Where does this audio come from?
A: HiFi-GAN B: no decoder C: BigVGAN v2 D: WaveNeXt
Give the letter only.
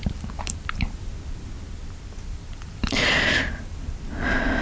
B